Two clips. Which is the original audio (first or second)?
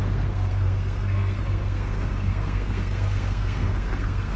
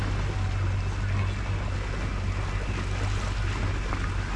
second